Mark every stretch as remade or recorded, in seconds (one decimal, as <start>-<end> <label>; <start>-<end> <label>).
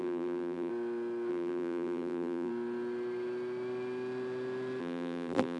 0.0-0.7 remade; 0.7-1.3 recorded; 1.3-2.5 remade; 2.5-4.8 recorded; 4.8-5.6 remade